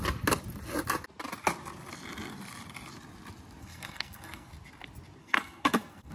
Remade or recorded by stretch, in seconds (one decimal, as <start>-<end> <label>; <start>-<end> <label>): 0.0-3.6 recorded; 3.6-4.5 remade; 4.5-5.2 recorded; 5.2-6.1 remade